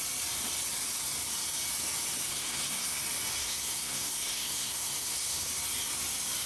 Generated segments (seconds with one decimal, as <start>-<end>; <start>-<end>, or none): 2.3-3.0; 3.4-5.5